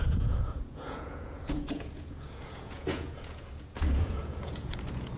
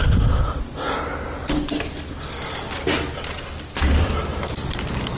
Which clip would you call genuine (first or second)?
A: second